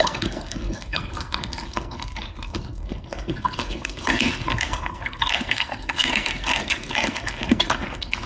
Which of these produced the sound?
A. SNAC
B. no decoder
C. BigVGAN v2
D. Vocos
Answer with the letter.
A